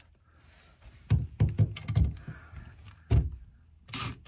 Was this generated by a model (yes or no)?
no